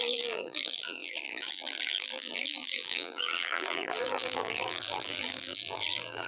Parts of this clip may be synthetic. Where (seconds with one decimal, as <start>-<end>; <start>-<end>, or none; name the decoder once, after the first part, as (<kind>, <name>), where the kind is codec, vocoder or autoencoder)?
0.0-6.3 (vocoder, BigVGAN v2)